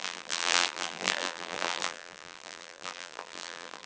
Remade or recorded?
remade